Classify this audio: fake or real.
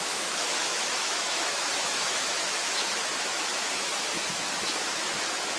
fake